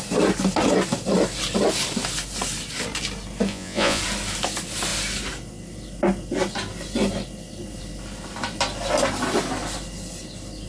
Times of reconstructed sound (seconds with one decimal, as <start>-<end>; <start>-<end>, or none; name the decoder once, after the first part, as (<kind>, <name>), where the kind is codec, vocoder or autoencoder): 3.5-4.0 (vocoder, Vocos)